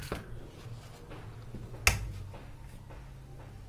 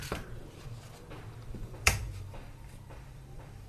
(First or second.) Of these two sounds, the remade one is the second